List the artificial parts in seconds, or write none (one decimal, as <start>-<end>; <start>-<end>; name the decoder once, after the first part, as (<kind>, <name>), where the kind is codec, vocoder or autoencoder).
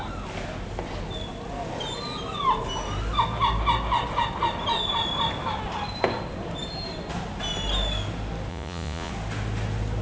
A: 8.5-9.1 (vocoder, Vocos)